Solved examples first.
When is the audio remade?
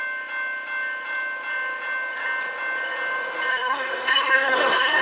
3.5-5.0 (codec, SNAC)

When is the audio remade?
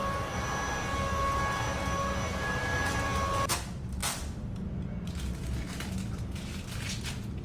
4.0-4.9 (vocoder, BigVGAN v2)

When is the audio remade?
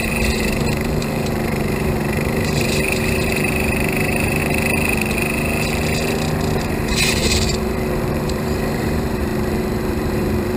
0.0-4.4 (vocoder, BigVGAN v2); 6.6-10.6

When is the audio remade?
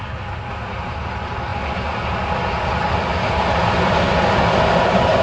none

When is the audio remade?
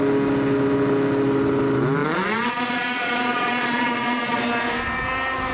2.0-4.4 (vocoder, Vocos)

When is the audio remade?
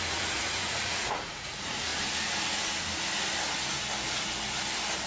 0.0-1.9 (vocoder, Vocos)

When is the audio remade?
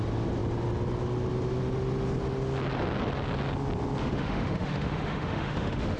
4.0-6.0 (autoencoder, DAC-VAE)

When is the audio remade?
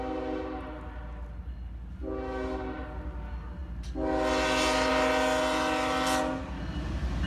none